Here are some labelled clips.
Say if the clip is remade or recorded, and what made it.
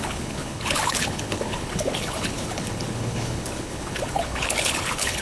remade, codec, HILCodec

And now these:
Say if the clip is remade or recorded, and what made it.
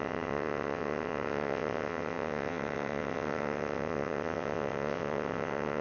remade, vocoder, WaveNeXt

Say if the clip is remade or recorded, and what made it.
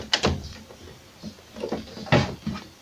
recorded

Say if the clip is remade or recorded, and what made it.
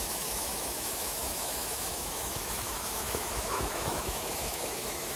remade, autoencoder, DAC-VAE